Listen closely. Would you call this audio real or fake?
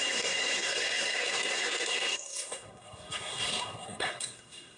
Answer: fake